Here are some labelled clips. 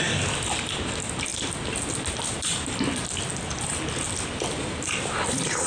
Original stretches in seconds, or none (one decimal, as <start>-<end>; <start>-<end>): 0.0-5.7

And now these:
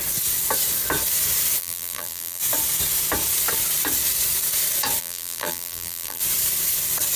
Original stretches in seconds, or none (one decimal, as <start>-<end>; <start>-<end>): 0.0-1.6; 2.4-5.0; 6.2-7.2

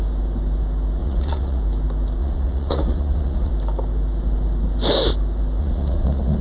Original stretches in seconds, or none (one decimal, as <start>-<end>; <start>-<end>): 0.0-1.0; 1.6-2.2; 3.5-5.6

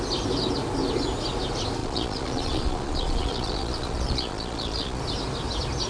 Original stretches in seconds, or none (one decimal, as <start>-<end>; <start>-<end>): 0.0-1.8; 5.0-5.9